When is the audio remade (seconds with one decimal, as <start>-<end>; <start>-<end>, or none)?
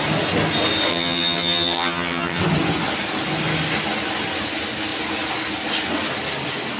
0.9-2.4